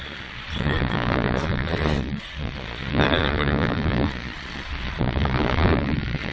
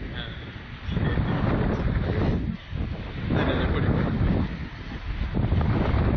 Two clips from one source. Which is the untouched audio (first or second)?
second